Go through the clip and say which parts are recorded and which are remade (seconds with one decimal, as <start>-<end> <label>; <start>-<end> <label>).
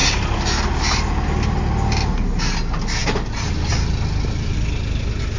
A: 0.0-5.4 recorded